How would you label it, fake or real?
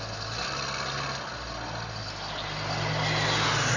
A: real